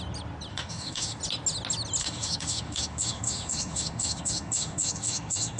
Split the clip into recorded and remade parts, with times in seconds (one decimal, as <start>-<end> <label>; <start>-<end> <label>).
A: 0.0-0.5 recorded; 0.5-1.2 remade; 1.2-2.0 recorded; 2.0-5.6 remade